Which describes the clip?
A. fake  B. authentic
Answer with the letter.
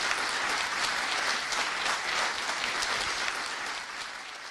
A